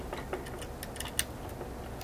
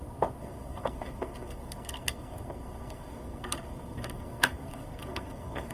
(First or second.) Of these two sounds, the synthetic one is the second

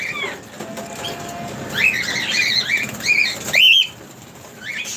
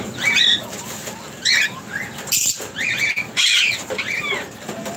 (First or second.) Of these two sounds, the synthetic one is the second